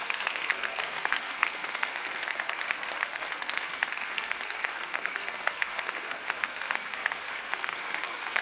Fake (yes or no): yes